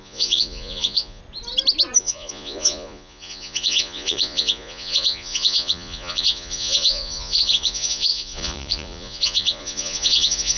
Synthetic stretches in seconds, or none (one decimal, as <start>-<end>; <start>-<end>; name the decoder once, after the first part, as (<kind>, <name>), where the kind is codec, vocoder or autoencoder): 0.0-1.2 (vocoder, Vocos); 2.0-10.6